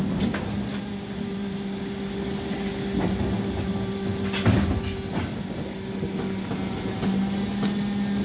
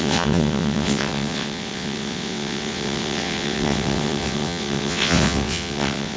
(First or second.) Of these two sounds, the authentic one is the first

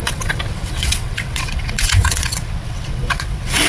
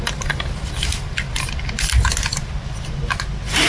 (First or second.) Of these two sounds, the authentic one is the second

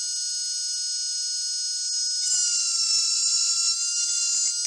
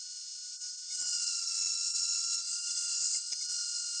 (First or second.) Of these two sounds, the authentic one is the first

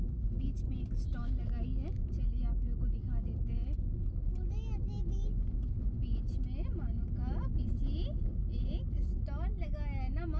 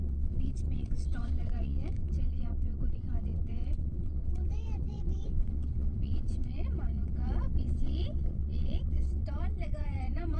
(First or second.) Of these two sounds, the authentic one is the first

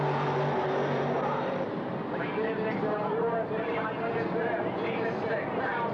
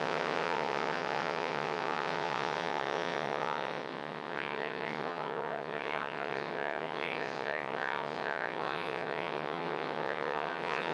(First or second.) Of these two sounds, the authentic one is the first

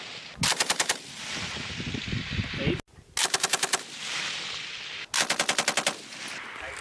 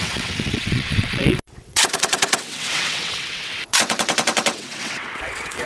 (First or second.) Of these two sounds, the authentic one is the first